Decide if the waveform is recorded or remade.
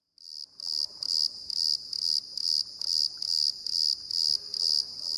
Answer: recorded